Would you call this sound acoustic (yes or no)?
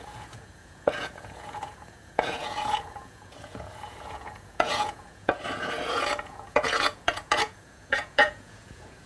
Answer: no